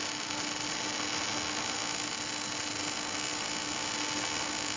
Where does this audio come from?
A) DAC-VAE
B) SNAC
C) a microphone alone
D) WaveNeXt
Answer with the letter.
C